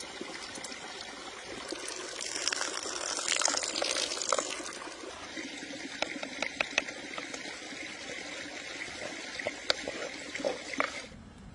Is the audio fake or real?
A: real